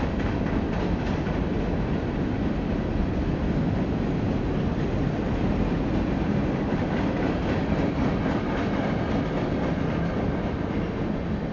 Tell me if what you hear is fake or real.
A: real